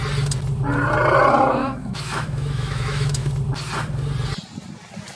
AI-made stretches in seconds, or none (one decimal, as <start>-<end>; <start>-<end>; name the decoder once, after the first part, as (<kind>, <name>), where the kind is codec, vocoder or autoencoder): 1.6-3.3 (autoencoder, DAC-VAE)